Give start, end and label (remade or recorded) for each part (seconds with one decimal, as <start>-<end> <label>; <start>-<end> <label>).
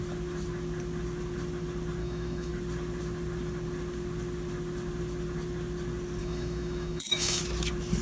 0.0-2.0 recorded; 2.0-2.5 remade; 2.5-6.2 recorded; 6.2-7.4 remade; 7.4-8.0 recorded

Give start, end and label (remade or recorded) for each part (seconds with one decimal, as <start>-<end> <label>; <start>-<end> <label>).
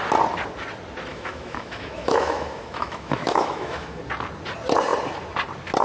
0.0-1.1 recorded; 1.1-4.0 remade; 4.0-5.8 recorded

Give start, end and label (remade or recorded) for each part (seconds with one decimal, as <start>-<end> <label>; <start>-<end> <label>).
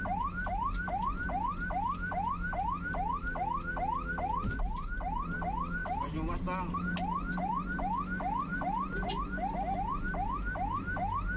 0.0-11.4 recorded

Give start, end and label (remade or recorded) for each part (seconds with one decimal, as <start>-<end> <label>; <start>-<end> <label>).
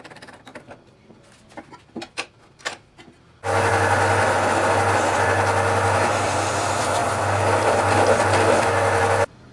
0.0-9.5 recorded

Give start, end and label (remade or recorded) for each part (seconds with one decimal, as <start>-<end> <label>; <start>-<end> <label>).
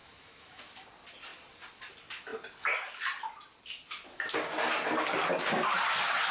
0.0-0.6 remade; 0.6-6.3 recorded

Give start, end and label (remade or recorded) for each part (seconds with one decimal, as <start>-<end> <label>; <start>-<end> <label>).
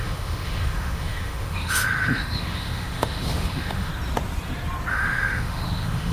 0.0-3.9 remade; 3.9-4.9 recorded; 4.9-6.1 remade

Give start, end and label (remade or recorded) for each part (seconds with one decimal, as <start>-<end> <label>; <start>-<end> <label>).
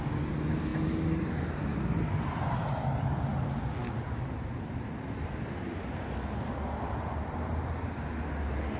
0.0-8.8 recorded